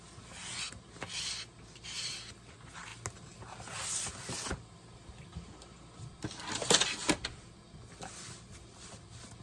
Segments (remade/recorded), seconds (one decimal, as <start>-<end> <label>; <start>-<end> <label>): 0.0-9.4 recorded